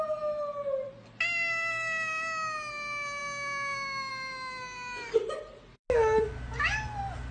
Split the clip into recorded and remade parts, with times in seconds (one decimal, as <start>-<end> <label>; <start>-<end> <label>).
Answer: 0.0-7.3 recorded